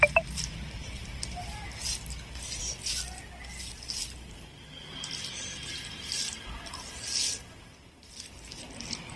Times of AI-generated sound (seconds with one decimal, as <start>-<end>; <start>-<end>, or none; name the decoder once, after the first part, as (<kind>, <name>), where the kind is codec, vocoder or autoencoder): none